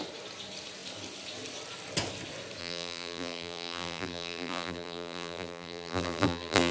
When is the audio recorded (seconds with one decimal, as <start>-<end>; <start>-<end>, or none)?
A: 0.0-2.6